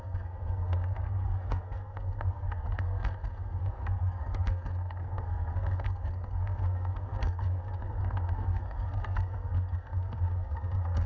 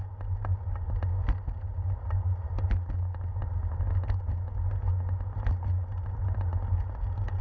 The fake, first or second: first